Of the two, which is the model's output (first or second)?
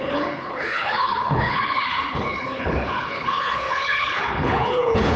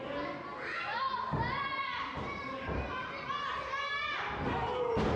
first